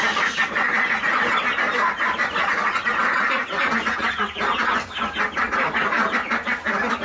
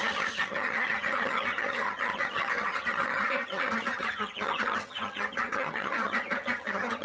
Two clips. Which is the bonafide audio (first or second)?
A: first